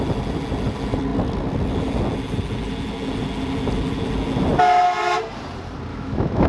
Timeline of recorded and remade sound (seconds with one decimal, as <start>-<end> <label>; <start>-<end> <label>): 0.0-5.9 recorded; 5.9-6.5 remade